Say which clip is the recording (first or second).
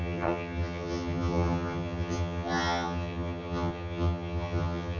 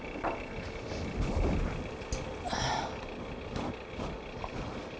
second